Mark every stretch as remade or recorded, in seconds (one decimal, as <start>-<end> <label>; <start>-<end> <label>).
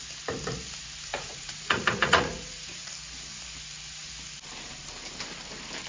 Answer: 0.0-1.1 recorded; 1.1-2.9 remade; 2.9-5.9 recorded